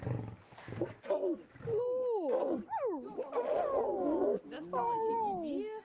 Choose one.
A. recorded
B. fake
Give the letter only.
A